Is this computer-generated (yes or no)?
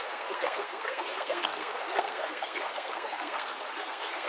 yes